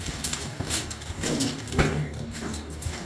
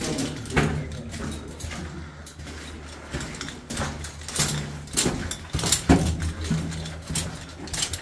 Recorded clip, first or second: second